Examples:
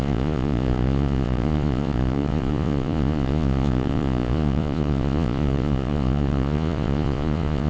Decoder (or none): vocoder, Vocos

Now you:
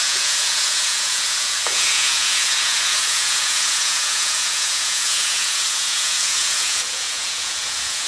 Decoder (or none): vocoder, Vocos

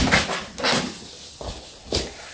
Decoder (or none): none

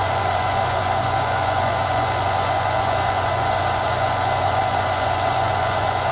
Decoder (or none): vocoder, Vocos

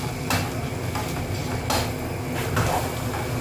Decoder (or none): none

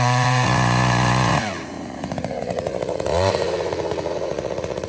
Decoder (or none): vocoder, Vocos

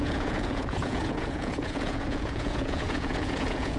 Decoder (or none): vocoder, Vocos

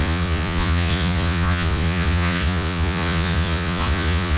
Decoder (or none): vocoder, Vocos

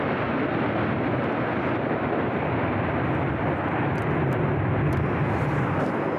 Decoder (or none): none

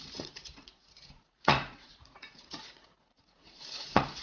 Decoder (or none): vocoder, Vocos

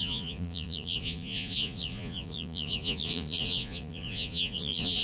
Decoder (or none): vocoder, Vocos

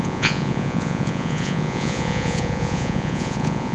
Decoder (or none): vocoder, Vocos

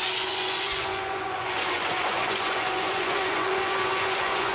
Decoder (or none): vocoder, Vocos